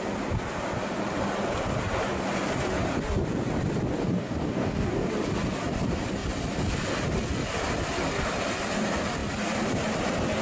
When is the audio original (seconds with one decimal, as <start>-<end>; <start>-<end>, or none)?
0.0-4.0; 5.1-10.4